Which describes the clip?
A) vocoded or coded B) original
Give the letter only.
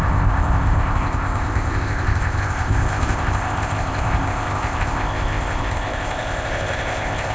A